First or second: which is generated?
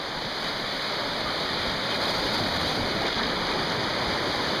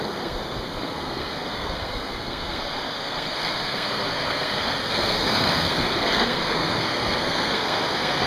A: second